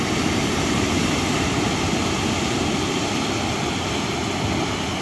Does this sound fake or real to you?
real